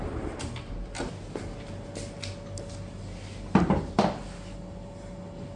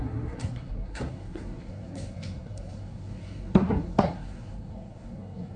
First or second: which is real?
first